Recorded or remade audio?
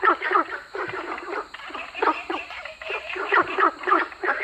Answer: remade